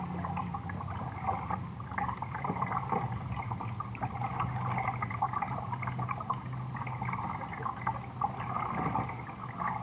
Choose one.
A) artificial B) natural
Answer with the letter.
B